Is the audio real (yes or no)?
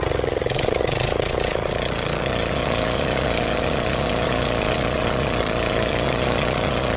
no